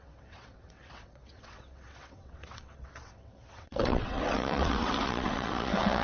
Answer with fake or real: fake